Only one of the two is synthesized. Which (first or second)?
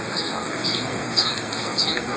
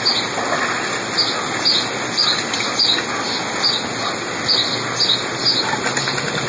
first